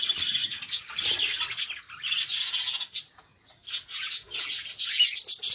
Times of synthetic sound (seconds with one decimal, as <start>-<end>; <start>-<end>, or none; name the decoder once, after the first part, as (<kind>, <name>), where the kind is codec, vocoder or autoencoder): 0.4-0.9 (vocoder, Vocos); 2.3-5.0